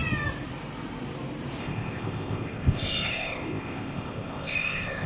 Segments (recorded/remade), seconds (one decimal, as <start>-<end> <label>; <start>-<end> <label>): 0.0-1.6 recorded; 1.6-5.1 remade